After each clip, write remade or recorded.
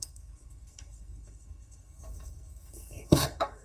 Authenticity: remade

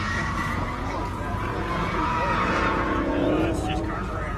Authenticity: remade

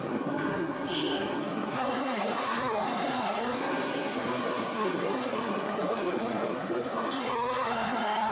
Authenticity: remade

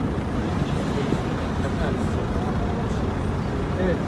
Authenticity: recorded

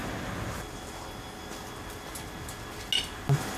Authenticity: recorded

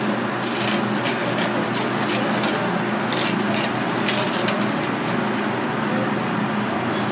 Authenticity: recorded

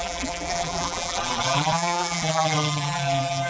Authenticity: remade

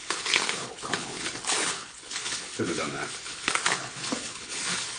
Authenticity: remade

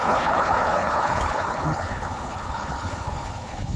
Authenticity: remade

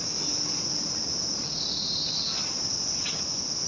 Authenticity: recorded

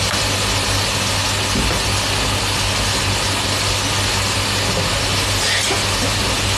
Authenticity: recorded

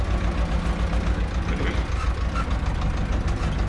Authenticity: recorded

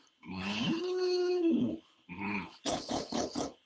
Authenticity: remade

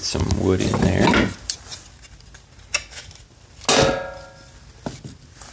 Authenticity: recorded